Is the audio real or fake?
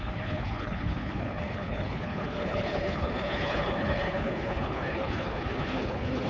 fake